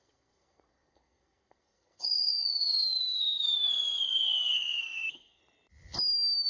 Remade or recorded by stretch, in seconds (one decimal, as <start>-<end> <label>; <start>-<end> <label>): 0.0-5.4 remade; 5.4-6.5 recorded